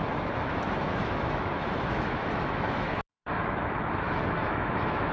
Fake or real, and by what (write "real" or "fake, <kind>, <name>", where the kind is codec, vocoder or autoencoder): fake, autoencoder, DAC-VAE